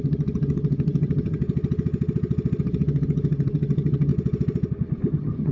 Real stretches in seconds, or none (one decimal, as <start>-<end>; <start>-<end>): 1.4-2.6; 4.1-5.1